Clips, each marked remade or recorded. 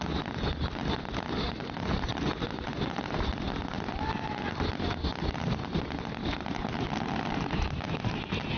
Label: recorded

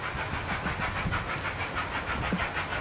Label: recorded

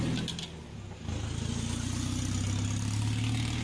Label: recorded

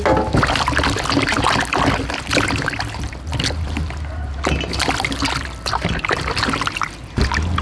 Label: recorded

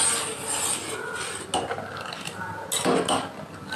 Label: recorded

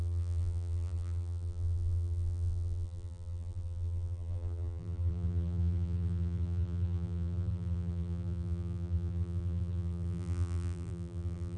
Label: remade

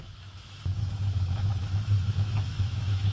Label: remade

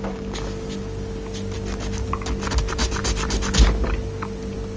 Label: recorded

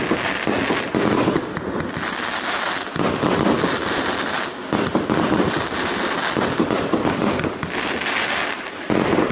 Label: recorded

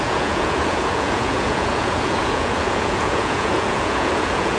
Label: remade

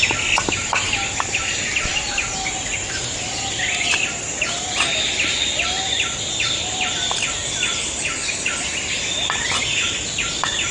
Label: recorded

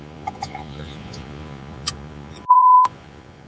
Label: remade